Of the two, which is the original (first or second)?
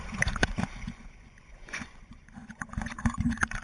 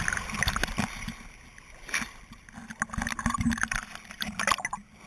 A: second